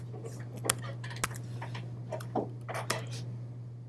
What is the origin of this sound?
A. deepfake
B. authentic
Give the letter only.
B